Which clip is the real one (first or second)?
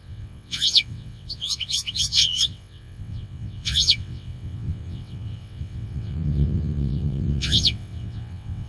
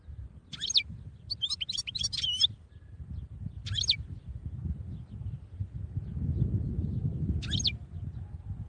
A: second